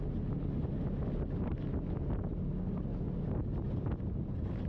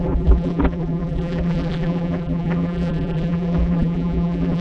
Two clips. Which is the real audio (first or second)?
first